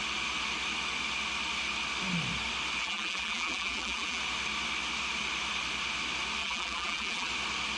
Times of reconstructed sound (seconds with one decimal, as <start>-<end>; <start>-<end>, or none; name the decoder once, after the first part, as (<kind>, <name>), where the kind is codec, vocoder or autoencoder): 2.8-4.2 (vocoder, BigVGAN v2); 6.4-7.3